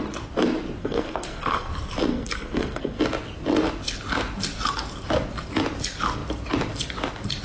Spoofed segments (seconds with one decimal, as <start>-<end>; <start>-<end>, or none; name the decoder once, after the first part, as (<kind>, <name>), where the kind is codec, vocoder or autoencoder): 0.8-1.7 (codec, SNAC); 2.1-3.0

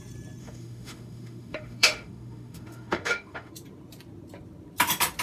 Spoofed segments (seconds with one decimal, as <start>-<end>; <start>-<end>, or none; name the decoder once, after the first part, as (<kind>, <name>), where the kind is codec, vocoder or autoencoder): 0.4-3.5 (autoencoder, DAC-VAE)

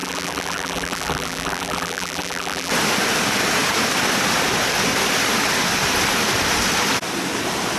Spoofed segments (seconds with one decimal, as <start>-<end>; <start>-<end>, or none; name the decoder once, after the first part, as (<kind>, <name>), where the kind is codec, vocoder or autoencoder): 0.0-2.7 (vocoder, BigVGAN v2)

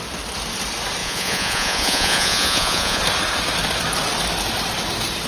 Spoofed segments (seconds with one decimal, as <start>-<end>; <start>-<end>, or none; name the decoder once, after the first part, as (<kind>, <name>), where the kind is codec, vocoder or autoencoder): 1.0-3.0 (vocoder, Vocos)

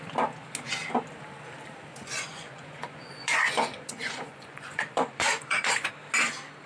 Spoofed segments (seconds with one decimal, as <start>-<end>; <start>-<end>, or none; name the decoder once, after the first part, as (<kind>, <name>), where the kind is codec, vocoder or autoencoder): 1.9-5.9 (vocoder, Vocos)

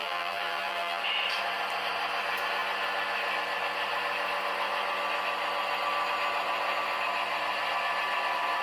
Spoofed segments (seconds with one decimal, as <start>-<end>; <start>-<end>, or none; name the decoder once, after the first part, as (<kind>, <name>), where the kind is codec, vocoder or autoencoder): 0.0-1.0 (vocoder, BigVGAN v2)

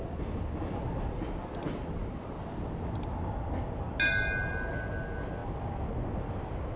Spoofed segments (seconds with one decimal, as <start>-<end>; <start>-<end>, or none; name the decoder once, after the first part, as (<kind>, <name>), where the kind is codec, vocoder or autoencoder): none

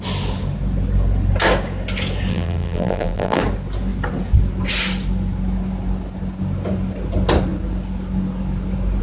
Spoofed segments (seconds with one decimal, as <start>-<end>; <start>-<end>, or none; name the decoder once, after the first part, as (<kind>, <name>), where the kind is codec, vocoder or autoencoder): 2.3-3.4 (vocoder, BigVGAN v2)